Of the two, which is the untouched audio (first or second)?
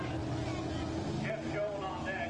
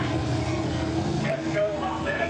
first